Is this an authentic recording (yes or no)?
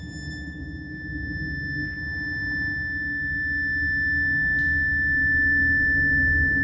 yes